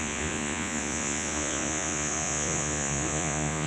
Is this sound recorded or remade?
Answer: remade